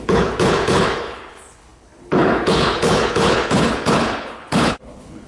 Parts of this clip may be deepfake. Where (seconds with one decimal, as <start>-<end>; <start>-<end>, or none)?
0.0-5.3